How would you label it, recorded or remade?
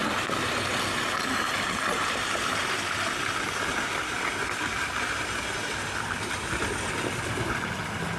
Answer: recorded